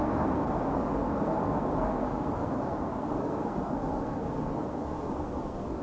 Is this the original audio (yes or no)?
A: no